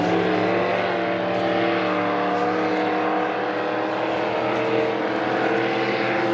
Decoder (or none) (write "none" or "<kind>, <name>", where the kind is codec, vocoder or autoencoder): none